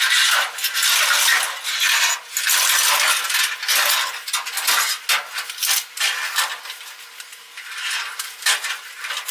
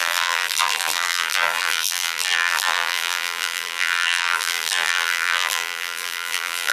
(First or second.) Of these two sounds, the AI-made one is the second